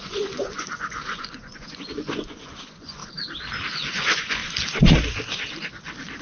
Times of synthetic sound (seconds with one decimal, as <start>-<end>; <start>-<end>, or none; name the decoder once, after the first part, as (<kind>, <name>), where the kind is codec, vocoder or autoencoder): 0.0-3.0 (vocoder, Vocos); 3.7-4.4